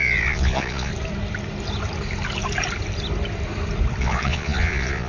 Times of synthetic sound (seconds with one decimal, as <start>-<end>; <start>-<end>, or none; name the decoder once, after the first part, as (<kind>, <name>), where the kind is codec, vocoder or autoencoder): 0.0-0.9 (vocoder, Vocos); 4.0-5.1